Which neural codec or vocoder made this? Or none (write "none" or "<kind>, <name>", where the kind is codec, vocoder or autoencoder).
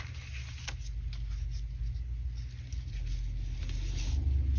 none